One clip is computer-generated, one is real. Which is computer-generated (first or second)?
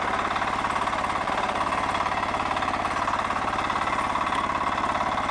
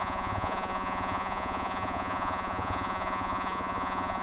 second